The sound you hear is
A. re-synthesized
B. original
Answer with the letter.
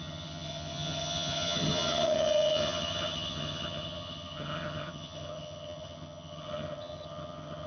A